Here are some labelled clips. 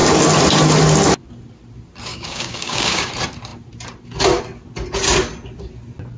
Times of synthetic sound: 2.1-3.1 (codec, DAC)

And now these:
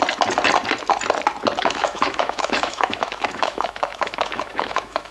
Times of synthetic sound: 1.6-5.1 (autoencoder, DAC-VAE)

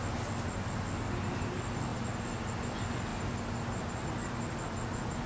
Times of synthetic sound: none

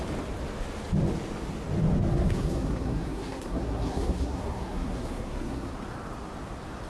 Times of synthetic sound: 2.1-5.7 (codec, SNAC)

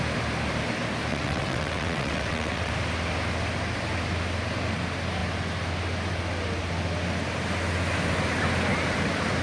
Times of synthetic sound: 1.1-2.7 (vocoder, WaveNeXt)